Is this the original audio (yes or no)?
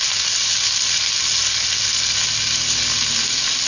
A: yes